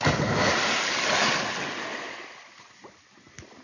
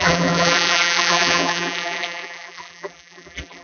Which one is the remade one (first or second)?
second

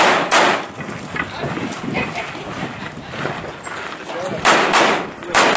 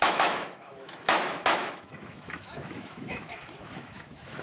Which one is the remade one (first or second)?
second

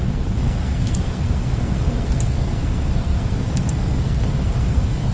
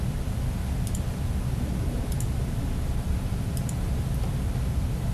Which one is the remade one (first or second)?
first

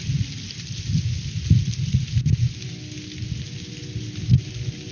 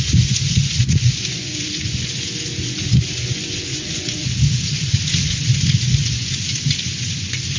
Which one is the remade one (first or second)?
second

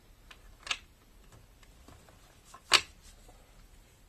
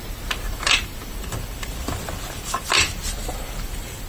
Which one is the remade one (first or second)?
second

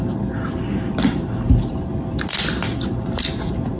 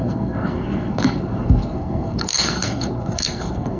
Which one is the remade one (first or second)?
second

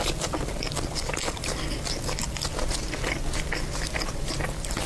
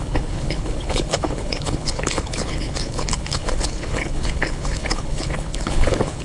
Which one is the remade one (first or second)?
second